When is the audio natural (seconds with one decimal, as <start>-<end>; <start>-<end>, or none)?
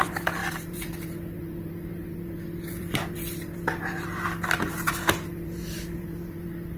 none